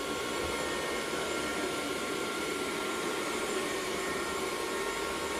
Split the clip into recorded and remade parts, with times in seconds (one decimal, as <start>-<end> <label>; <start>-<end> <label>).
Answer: 0.0-1.5 recorded; 1.5-4.7 remade; 4.7-5.4 recorded